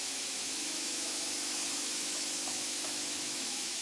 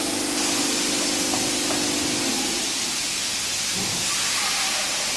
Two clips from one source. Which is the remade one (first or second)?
first